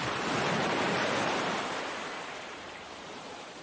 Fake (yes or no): yes